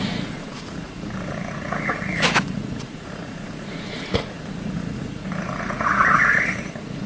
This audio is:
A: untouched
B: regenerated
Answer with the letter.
B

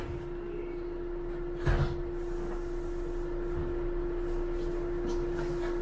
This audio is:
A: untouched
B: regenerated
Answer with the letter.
A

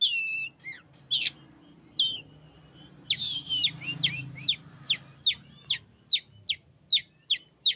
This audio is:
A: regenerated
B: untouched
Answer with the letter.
B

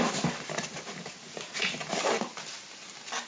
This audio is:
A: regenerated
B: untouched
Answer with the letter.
B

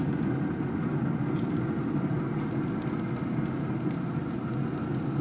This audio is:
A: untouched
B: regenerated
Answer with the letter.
A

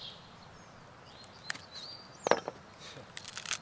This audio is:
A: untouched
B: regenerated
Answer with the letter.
A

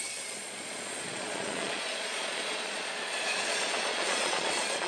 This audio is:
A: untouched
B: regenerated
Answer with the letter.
B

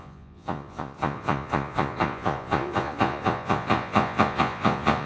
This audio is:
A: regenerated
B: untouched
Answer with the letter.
A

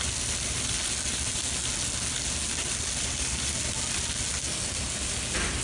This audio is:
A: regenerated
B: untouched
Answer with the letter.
B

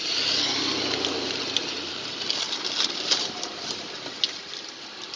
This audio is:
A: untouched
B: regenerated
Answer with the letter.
A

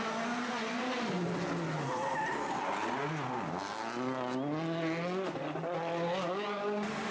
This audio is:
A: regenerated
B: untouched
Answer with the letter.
B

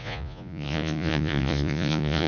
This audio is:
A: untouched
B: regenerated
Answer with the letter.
B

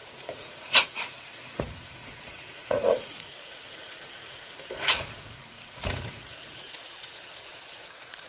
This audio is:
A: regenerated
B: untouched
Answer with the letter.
A